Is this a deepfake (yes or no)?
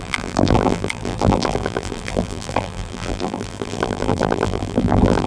yes